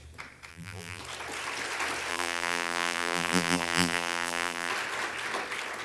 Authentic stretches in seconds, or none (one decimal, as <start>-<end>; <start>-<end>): 0.0-0.5; 1.0-2.1; 4.7-5.8